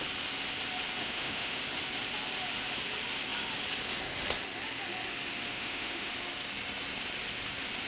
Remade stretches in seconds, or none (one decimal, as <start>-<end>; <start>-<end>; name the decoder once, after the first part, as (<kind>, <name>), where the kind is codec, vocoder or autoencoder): 1.0-1.6 (autoencoder, DAC-VAE); 5.5-6.1